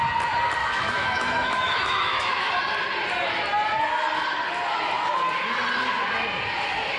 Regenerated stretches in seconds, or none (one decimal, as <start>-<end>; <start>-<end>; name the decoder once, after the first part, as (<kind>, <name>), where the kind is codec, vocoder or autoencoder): 0.6-2.5 (autoencoder, DAC-VAE)